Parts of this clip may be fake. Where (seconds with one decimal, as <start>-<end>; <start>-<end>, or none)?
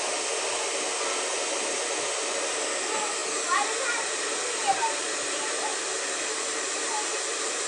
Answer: 3.2-7.7